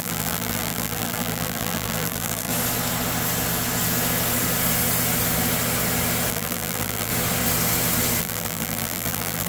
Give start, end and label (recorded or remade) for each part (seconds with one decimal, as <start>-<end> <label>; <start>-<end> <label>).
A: 0.0-2.5 remade; 2.5-6.3 recorded; 6.3-7.1 remade; 7.1-8.2 recorded; 8.2-9.5 remade